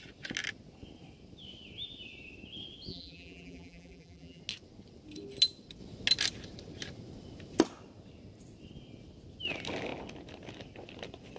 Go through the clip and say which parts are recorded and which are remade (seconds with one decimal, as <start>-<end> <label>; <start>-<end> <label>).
0.0-2.9 recorded; 2.9-4.4 remade; 4.4-11.4 recorded

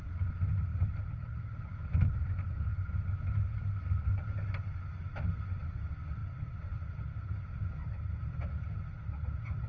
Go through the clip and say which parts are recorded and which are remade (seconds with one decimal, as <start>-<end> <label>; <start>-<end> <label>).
0.0-0.7 recorded; 0.7-2.1 remade; 2.1-6.2 recorded; 6.2-8.7 remade; 8.7-9.7 recorded

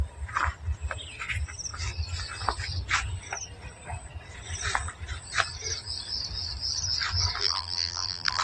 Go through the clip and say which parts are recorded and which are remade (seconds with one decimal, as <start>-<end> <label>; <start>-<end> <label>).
0.0-7.4 recorded; 7.4-8.4 remade

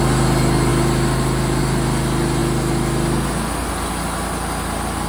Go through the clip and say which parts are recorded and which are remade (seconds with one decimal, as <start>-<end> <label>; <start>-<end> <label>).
0.0-5.1 recorded